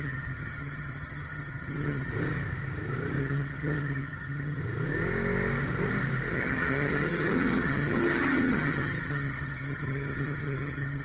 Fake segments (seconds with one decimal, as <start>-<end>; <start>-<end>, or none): 0.0-2.1; 3.2-4.6; 6.3-11.0